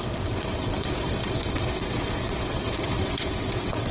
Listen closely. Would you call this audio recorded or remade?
remade